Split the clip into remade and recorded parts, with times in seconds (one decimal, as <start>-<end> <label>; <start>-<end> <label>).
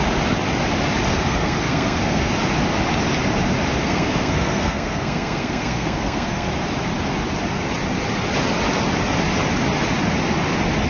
0.0-1.1 recorded; 1.1-2.3 remade; 2.3-3.8 recorded; 3.8-6.5 remade; 6.5-10.9 recorded